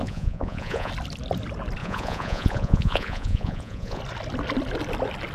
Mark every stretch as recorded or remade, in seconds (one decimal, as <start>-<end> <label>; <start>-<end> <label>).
0.0-0.9 remade; 0.9-1.8 recorded; 1.8-4.0 remade; 4.0-5.3 recorded